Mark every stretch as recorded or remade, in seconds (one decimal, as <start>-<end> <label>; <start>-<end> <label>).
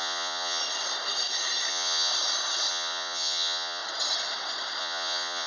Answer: 0.0-0.6 remade; 0.6-1.7 recorded; 1.7-2.1 remade; 2.1-2.7 recorded; 2.7-3.8 remade; 3.8-4.8 recorded; 4.8-5.5 remade